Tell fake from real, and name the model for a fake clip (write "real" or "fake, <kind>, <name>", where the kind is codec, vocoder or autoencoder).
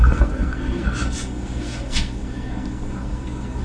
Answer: fake, codec, SNAC